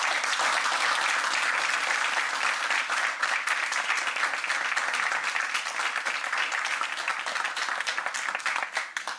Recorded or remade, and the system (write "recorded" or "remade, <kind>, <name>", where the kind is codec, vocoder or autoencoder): recorded